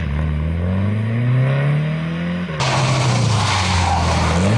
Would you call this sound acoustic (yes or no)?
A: yes